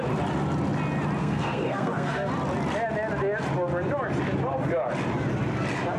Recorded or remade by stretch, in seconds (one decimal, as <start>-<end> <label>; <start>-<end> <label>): 0.0-1.2 recorded; 1.2-2.3 remade; 2.3-6.0 recorded